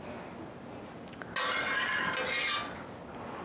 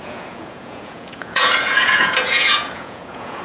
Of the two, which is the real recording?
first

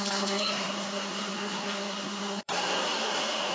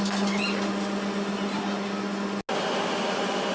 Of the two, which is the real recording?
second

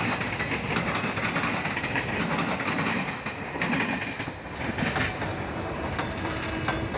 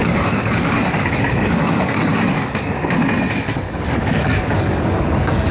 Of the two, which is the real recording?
first